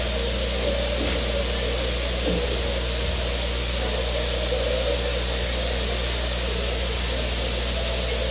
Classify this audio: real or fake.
real